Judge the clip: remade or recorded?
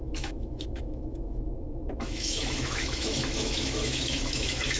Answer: remade